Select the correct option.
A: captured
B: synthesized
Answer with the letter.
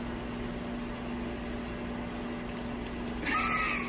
A